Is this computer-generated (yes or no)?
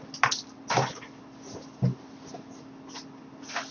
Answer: no